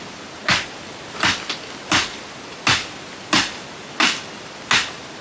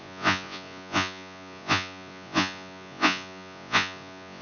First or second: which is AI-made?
second